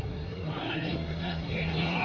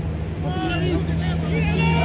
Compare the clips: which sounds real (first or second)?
second